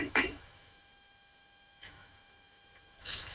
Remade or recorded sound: remade